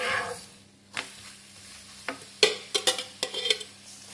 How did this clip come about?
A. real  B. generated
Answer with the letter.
A